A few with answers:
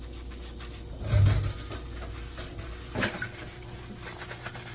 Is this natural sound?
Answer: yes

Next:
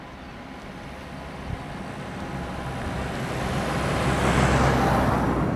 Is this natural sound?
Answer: yes